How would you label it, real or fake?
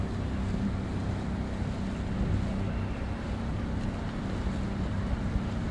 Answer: real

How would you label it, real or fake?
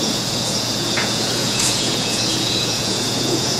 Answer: fake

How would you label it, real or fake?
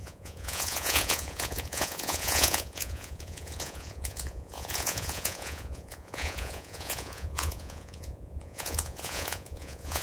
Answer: fake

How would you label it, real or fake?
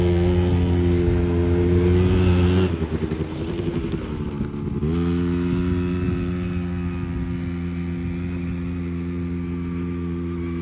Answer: real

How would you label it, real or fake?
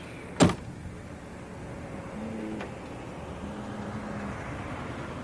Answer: real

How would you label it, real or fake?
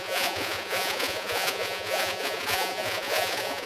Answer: fake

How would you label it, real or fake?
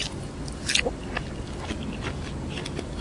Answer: real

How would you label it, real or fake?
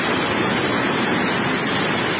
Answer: real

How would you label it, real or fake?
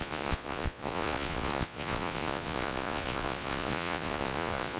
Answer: fake